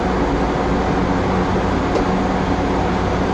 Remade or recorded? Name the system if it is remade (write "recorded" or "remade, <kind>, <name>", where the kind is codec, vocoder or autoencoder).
recorded